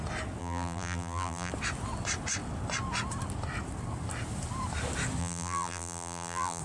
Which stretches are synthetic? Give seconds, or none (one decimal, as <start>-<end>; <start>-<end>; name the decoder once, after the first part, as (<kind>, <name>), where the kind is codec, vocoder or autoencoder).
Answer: 0.4-1.5 (vocoder, BigVGAN v2); 5.2-6.6